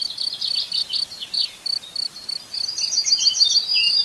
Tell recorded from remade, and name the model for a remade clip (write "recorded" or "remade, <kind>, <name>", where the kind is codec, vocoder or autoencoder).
recorded